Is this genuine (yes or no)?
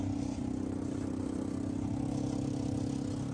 yes